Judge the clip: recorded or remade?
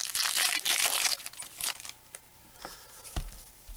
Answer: remade